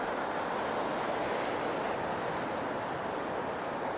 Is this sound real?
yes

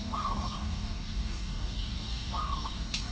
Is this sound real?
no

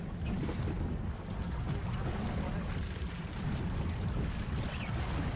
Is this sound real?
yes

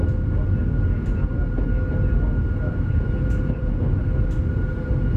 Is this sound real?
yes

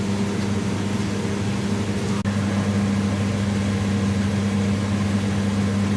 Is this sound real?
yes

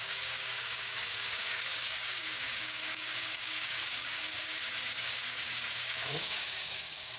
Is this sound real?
no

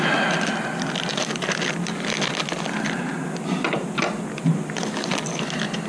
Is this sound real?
yes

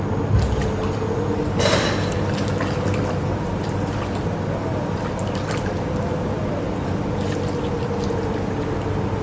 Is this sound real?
yes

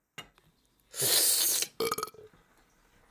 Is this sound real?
yes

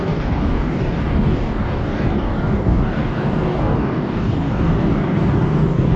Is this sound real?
no